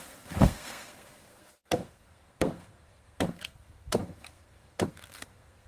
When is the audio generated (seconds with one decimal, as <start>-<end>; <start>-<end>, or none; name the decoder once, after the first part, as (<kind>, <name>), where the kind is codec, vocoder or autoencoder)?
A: 0.0-5.7 (codec, SNAC)